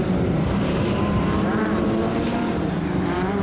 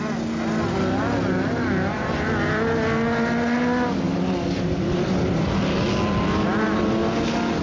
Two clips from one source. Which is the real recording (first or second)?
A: second